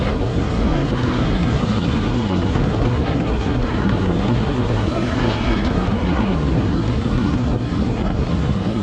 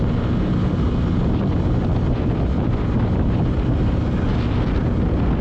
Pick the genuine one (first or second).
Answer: second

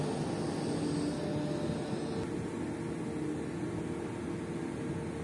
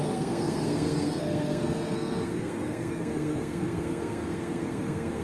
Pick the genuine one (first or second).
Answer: first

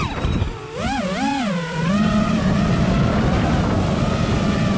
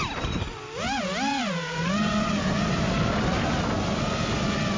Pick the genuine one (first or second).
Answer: second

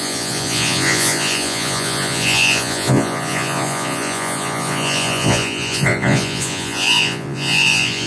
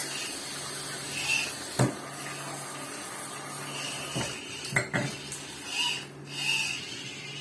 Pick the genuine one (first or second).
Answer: second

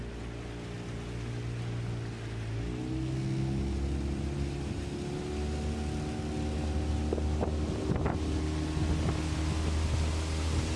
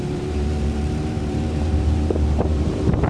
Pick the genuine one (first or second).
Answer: first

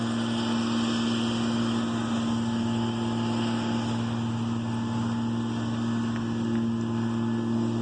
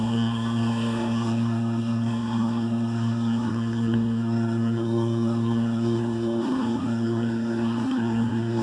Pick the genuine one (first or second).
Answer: first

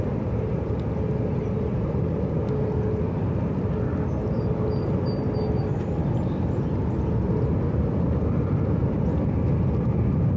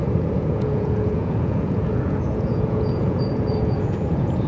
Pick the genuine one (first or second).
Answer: first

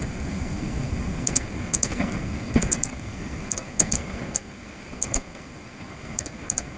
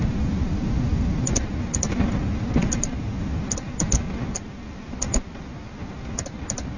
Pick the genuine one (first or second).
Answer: second